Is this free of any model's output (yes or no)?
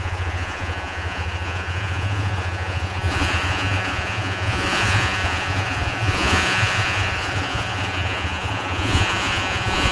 no